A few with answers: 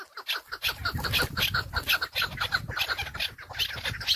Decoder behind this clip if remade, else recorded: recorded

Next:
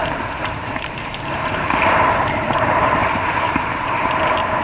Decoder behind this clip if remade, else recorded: remade, vocoder, BigVGAN v2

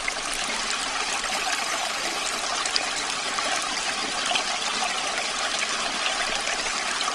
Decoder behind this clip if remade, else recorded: recorded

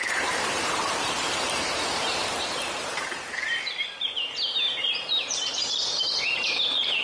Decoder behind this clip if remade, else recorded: remade, vocoder, BigVGAN v2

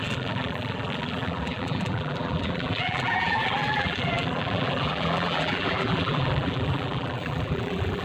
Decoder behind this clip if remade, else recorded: remade, vocoder, BigVGAN v2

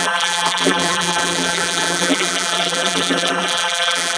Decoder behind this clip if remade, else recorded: remade, vocoder, BigVGAN v2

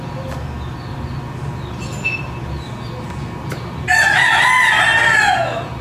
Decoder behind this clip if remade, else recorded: recorded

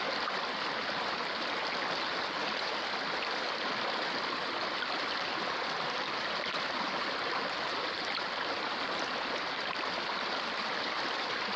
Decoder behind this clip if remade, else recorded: recorded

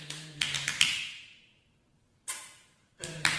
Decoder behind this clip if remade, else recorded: remade, vocoder, BigVGAN v2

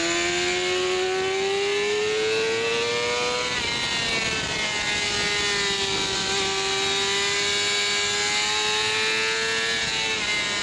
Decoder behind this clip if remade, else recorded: recorded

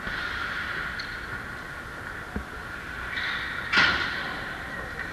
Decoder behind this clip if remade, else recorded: recorded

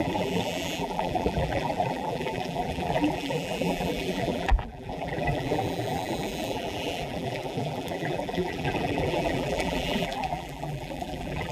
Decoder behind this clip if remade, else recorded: remade, vocoder, BigVGAN v2